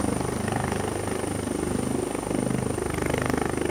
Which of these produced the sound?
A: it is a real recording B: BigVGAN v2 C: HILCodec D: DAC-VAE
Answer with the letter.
A